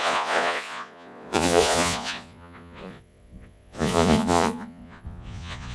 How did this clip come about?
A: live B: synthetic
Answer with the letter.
B